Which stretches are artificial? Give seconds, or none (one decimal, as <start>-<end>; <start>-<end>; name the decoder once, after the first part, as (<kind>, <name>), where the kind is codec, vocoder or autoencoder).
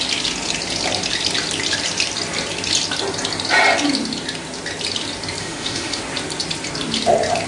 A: 5.4-6.0 (autoencoder, DAC-VAE)